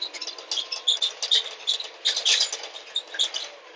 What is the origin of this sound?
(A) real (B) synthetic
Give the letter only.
A